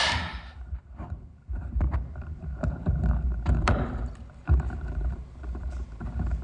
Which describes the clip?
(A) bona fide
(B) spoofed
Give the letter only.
B